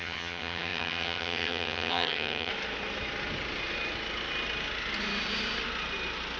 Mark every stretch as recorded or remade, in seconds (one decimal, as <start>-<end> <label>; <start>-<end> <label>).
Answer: 0.0-2.5 remade; 2.5-6.4 recorded